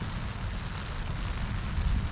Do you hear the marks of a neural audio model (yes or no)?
no